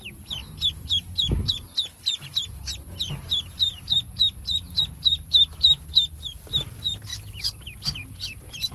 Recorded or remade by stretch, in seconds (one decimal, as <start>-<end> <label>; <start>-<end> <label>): 0.0-8.7 recorded